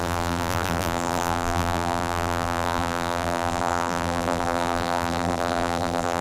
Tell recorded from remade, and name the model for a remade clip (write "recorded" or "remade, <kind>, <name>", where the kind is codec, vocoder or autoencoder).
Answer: remade, vocoder, BigVGAN v2